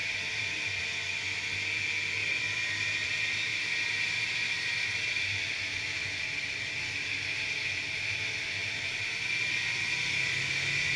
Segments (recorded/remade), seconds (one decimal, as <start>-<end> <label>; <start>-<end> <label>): 0.0-0.8 remade; 0.8-2.2 recorded; 2.2-3.1 remade; 3.1-3.5 recorded; 3.5-5.4 remade; 5.4-11.0 recorded